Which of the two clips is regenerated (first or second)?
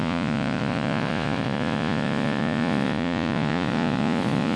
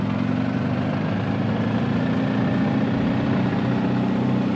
first